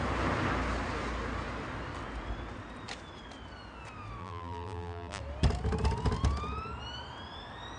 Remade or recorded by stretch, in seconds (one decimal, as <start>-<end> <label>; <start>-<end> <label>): 0.0-4.2 recorded; 4.2-5.2 remade; 5.2-7.8 recorded